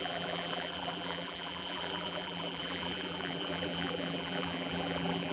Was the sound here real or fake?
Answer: fake